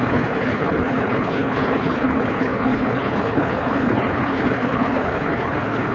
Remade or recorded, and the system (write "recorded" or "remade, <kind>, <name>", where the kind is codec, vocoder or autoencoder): remade, codec, HILCodec